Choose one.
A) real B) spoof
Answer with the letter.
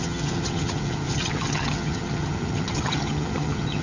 B